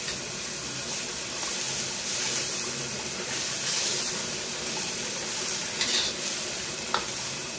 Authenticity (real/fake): real